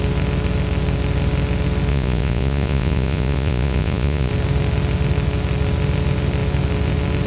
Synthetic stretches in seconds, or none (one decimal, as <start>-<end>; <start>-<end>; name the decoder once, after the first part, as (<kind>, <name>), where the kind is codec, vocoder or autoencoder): 1.9-4.3 (vocoder, Vocos)